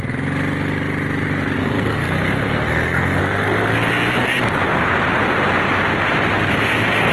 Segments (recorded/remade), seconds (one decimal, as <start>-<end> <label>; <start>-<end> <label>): 0.0-1.6 recorded; 1.6-3.2 remade; 3.2-7.1 recorded